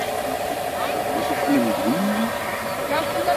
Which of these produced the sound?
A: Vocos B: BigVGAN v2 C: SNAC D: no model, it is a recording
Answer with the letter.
D